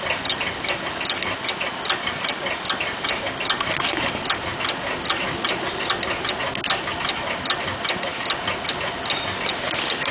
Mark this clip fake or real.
real